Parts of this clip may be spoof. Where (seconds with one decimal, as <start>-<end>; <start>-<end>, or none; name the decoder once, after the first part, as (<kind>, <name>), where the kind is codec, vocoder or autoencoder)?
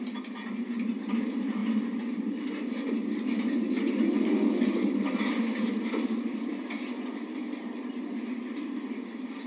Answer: none